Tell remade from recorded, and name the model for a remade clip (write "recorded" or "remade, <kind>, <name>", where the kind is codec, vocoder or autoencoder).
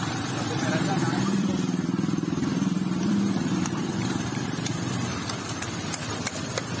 remade, vocoder, BigVGAN v2